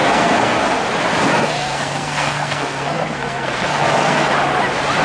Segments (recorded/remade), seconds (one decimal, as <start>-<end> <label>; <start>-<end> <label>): 0.0-0.6 remade; 0.6-1.3 recorded; 1.3-4.3 remade; 4.3-5.0 recorded